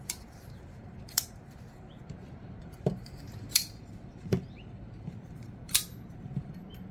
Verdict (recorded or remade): remade